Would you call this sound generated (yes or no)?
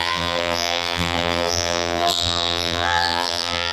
yes